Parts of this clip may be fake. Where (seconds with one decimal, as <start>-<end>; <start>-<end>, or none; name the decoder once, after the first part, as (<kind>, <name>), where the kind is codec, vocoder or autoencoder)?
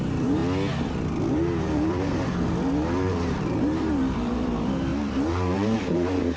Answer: 0.0-0.4 (vocoder, BigVGAN v2); 1.3-6.4